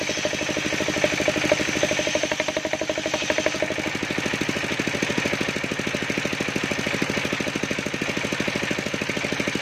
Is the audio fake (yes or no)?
no